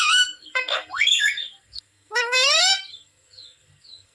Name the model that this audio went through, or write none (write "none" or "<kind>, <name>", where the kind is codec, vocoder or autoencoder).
codec, SNAC